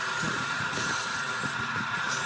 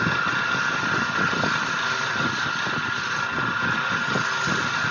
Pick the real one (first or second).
second